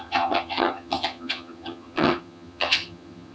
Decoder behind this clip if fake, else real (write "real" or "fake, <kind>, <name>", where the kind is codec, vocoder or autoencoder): fake, vocoder, HiFi-GAN